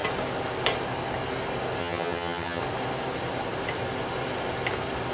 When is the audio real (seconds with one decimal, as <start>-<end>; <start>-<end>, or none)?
0.0-1.8; 2.6-5.1